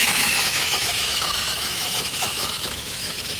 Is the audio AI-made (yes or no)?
yes